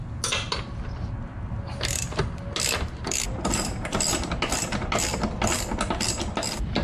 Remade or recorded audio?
recorded